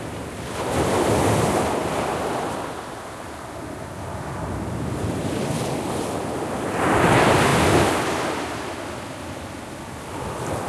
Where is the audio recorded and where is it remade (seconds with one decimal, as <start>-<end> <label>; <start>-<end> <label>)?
0.0-10.7 recorded